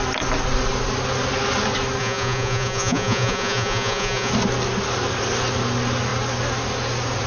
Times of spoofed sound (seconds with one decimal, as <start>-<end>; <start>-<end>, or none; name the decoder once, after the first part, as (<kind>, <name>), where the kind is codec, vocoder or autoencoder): 2.0-4.3 (vocoder, Vocos)